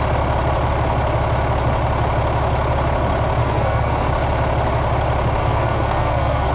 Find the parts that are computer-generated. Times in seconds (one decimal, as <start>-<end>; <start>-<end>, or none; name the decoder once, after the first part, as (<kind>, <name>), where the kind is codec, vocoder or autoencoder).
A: 3.4-4.1 (codec, SNAC); 5.4-6.5